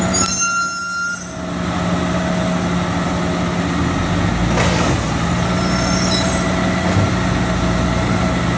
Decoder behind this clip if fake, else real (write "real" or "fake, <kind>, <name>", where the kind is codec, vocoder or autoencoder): real